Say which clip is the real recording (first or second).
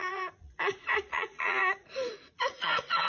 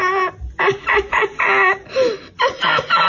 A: second